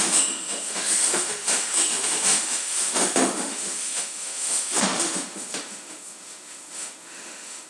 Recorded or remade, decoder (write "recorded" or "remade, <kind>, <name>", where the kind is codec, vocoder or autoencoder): remade, autoencoder, DAC-VAE